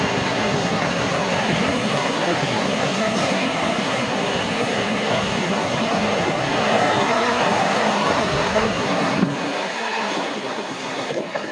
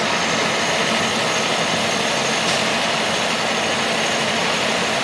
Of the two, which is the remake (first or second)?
first